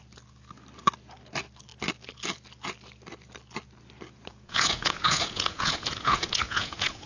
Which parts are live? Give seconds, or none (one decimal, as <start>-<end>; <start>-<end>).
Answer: 0.0-4.3